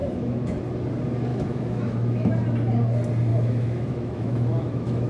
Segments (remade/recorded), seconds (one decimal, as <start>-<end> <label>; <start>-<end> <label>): 0.0-0.6 remade; 0.6-1.3 recorded; 1.3-2.3 remade; 2.3-3.3 recorded; 3.3-5.1 remade